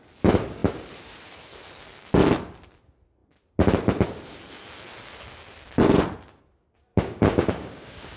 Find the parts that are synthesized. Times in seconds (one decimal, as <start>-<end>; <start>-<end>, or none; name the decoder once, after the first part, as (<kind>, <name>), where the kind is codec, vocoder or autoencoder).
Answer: 6.9-8.2 (codec, DAC)